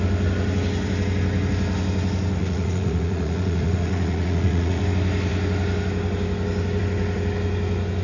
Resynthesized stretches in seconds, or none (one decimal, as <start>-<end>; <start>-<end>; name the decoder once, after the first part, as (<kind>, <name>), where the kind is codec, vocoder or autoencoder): 2.4-4.8 (vocoder, Vocos)